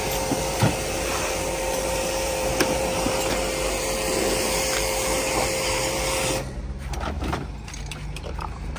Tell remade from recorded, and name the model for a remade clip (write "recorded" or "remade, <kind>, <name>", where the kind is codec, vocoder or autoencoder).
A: remade, vocoder, BigVGAN v2